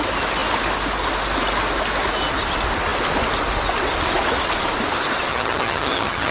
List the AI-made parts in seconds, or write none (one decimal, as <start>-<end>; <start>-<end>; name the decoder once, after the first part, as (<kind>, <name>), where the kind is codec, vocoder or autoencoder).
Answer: 5.3-6.3 (vocoder, HiFi-GAN)